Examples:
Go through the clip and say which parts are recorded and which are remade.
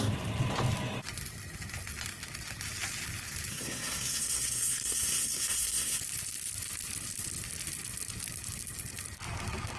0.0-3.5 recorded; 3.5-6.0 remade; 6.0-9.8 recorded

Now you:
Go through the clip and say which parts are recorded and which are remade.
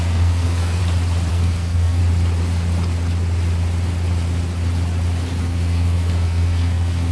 0.0-0.8 remade; 0.8-1.3 recorded; 1.3-2.0 remade; 2.0-5.4 recorded; 5.4-7.1 remade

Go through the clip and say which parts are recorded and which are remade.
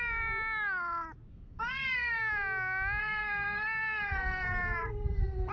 0.0-1.3 recorded; 1.3-2.2 remade; 2.2-3.0 recorded; 3.0-5.5 remade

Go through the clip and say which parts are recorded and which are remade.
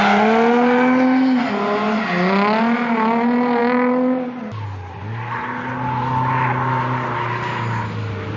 0.0-8.4 recorded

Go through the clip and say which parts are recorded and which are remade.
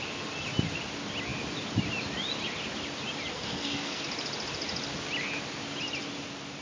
0.0-3.3 recorded; 3.3-4.0 remade; 4.0-6.6 recorded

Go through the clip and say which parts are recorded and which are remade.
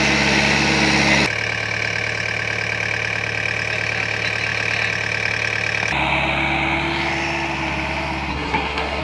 0.0-8.3 recorded; 8.3-9.0 remade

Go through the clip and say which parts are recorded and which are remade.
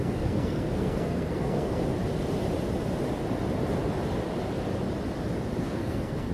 0.0-1.8 remade; 1.8-5.6 recorded; 5.6-6.3 remade